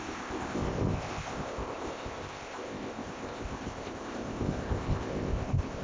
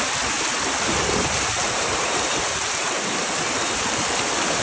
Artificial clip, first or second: first